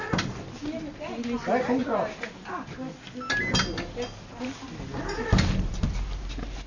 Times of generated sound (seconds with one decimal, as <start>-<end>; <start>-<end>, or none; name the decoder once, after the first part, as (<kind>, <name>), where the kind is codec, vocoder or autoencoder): none